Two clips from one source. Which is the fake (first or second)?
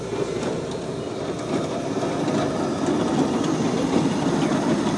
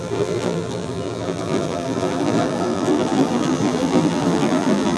second